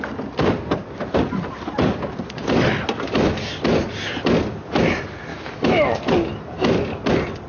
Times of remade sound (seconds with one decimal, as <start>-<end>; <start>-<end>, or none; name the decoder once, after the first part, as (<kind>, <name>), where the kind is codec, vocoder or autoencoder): 5.3-6.1 (autoencoder, DAC-VAE)